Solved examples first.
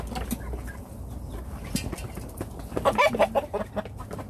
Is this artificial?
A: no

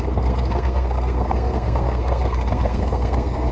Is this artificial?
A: yes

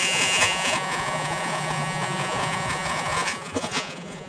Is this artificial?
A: yes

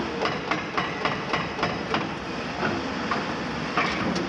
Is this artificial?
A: no